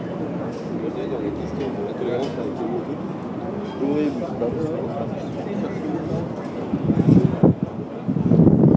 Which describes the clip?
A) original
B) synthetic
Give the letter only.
A